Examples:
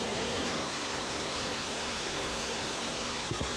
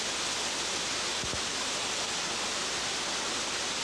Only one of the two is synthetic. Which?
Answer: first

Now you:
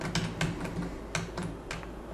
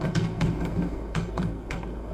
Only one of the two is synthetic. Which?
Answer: second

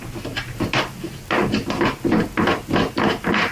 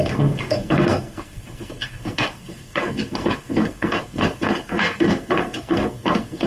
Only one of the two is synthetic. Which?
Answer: second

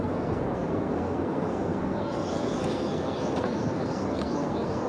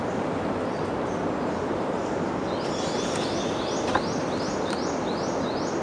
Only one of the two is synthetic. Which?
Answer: first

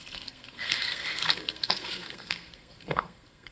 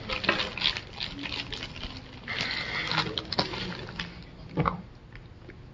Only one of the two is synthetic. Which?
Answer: first